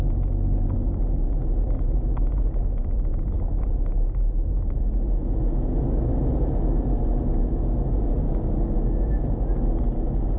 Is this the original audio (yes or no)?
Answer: yes